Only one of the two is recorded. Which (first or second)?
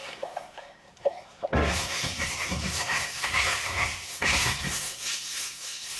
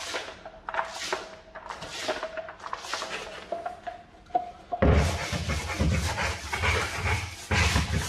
second